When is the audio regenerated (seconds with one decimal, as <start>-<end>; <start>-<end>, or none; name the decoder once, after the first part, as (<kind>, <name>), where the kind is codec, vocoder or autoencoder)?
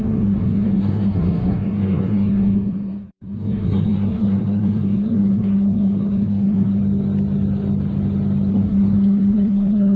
0.0-6.8 (codec, SNAC); 8.5-10.0